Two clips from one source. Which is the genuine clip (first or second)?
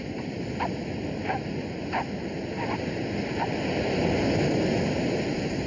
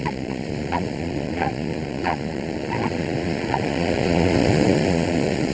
first